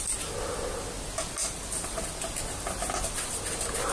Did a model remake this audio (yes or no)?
no